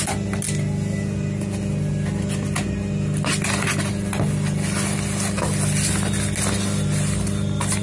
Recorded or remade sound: recorded